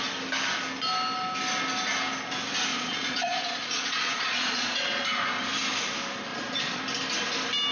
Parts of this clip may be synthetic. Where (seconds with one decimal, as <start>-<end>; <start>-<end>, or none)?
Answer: 2.7-5.0; 6.3-6.8